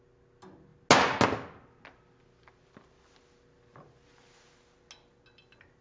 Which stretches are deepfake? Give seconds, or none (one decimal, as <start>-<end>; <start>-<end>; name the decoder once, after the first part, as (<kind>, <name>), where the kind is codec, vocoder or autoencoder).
none